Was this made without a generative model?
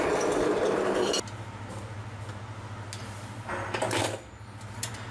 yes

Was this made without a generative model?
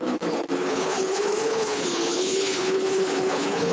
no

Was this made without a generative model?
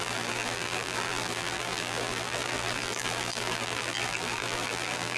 no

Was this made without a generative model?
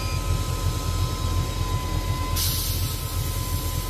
yes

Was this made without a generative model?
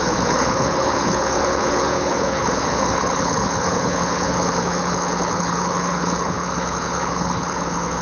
no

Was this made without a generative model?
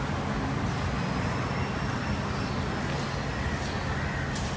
yes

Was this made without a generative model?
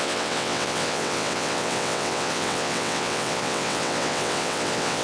no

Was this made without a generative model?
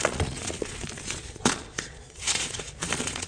no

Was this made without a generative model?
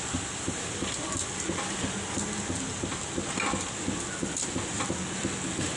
yes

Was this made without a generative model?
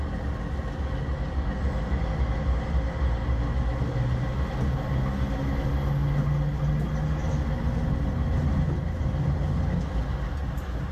yes